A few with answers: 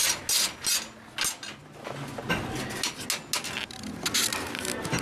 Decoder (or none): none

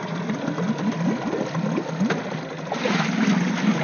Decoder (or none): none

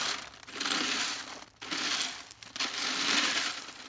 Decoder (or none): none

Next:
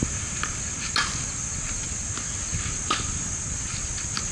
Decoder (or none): none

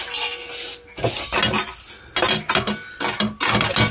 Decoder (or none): none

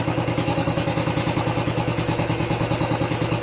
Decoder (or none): autoencoder, DAC-VAE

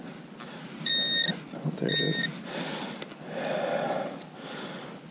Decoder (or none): none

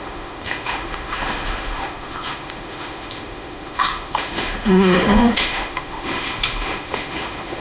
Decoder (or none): autoencoder, DAC-VAE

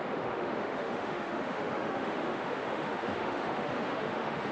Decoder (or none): autoencoder, DAC-VAE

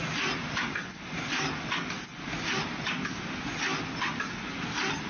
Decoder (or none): none